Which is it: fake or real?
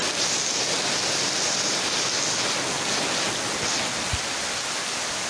real